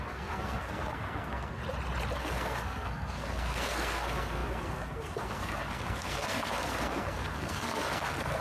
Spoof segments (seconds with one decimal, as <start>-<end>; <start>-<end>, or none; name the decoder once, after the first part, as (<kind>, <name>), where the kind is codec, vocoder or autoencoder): 0.0-1.6 (codec, SNAC); 2.2-8.4